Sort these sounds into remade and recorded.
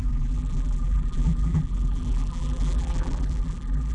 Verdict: remade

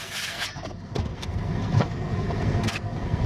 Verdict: remade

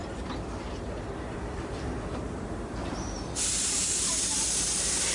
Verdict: remade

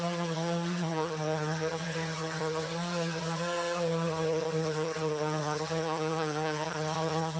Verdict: remade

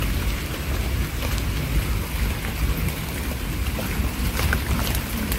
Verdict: recorded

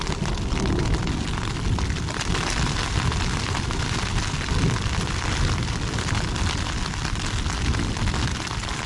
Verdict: recorded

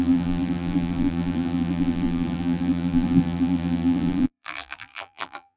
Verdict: remade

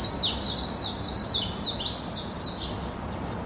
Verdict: recorded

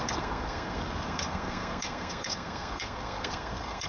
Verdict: remade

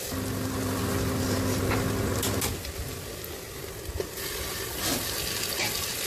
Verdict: recorded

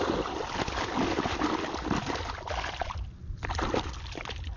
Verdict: recorded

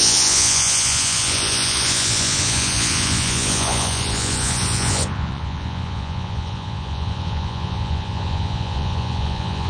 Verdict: remade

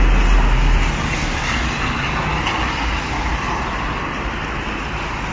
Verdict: recorded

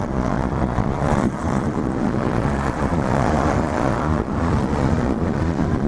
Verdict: remade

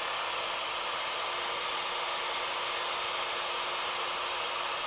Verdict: recorded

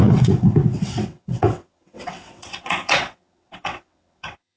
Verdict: remade